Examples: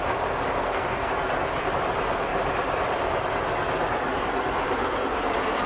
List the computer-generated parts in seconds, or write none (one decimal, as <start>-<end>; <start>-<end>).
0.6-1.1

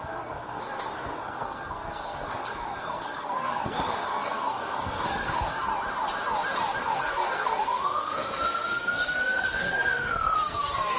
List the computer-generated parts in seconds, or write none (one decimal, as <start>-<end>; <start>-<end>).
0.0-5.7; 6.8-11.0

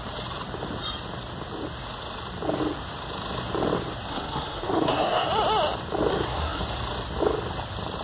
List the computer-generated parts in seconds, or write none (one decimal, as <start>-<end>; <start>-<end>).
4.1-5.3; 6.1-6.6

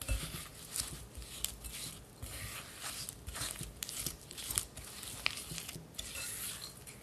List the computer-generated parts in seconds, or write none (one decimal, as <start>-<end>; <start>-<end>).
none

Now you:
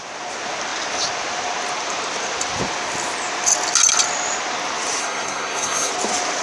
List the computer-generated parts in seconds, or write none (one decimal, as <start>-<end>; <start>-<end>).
5.0-5.9

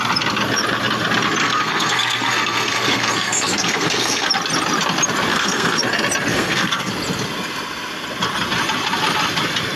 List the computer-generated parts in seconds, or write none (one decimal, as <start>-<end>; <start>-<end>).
1.4-4.3; 5.3-5.8; 6.3-6.9